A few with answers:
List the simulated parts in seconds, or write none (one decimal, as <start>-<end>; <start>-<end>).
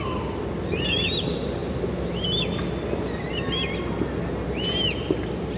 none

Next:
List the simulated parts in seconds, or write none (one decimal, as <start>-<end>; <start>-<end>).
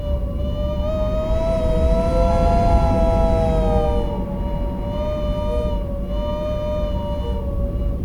none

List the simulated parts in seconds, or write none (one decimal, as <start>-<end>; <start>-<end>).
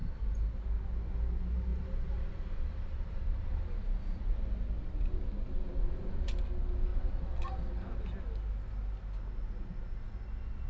0.0-0.6; 1.7-3.6; 6.9-7.5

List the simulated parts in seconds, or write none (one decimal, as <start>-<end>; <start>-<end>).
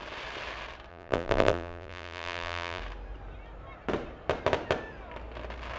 0.9-2.8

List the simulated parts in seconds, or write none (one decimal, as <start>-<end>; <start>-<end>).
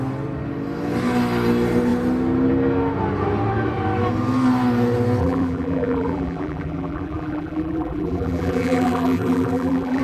5.2-10.0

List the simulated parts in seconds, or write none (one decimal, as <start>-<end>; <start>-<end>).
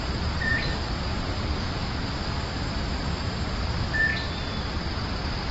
0.0-4.1; 4.9-5.5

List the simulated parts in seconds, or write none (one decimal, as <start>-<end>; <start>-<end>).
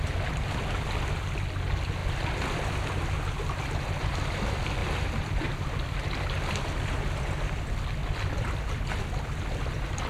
2.0-2.9; 4.8-5.5; 8.0-8.6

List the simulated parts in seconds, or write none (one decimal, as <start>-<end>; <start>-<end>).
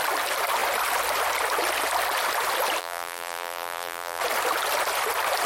2.8-4.2